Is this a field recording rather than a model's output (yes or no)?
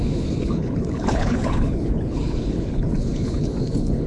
no